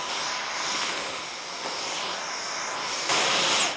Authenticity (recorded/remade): recorded